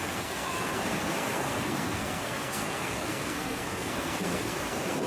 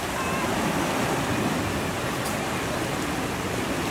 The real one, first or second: second